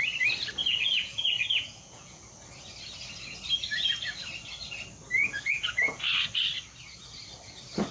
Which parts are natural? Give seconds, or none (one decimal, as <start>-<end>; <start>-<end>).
0.0-0.6; 2.2-5.2; 6.0-7.9